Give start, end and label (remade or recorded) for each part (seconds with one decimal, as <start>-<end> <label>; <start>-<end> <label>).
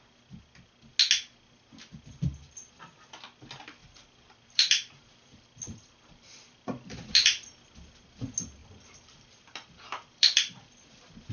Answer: 0.0-3.8 recorded; 3.8-8.0 remade; 8.0-8.6 recorded; 8.6-11.3 remade